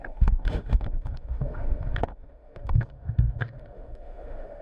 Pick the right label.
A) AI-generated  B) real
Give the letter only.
A